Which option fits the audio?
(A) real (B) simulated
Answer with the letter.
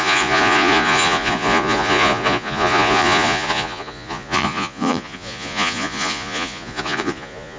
B